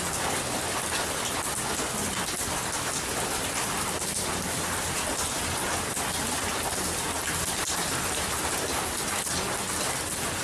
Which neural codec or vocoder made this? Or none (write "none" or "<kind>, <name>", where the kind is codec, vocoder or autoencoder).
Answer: none